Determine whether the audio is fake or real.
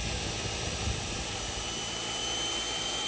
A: real